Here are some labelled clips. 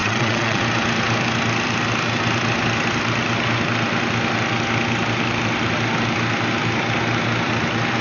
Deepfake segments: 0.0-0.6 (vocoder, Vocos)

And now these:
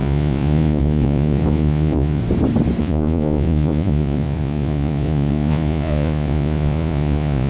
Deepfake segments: 0.0-2.2 (vocoder, Vocos); 2.8-7.5

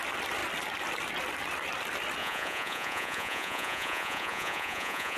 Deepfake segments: 2.2-5.2 (vocoder, Vocos)

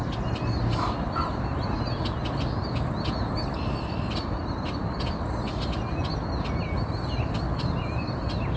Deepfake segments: none

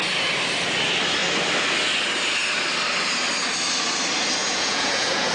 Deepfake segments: 4.4-5.3 (vocoder, Vocos)